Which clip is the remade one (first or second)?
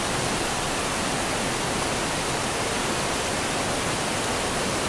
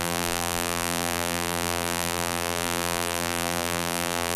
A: second